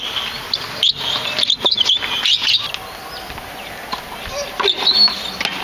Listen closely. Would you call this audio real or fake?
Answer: real